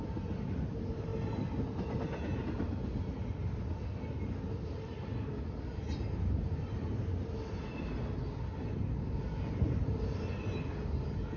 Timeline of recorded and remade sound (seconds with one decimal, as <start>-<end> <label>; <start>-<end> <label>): 0.0-11.4 recorded